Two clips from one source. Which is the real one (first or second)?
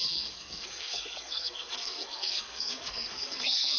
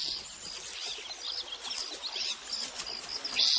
second